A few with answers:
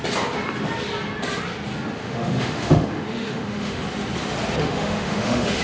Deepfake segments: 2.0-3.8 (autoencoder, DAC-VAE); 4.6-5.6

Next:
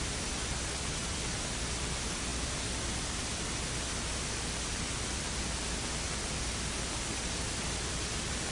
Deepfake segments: none

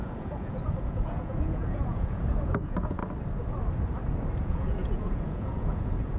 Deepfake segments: 0.0-3.0 (vocoder, Vocos); 4.4-6.2